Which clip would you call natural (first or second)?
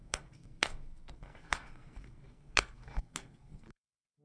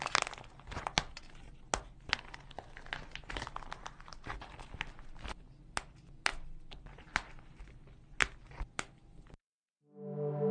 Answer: second